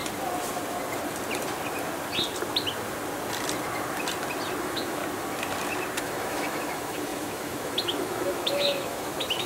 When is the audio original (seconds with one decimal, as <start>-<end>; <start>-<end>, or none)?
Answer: 0.0-4.6; 5.0-6.0